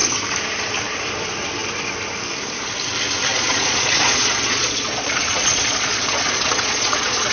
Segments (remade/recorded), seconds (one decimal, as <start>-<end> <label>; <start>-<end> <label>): 0.0-3.3 recorded; 3.3-7.3 remade